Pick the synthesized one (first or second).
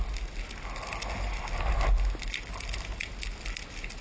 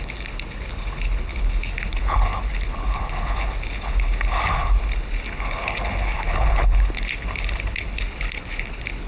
second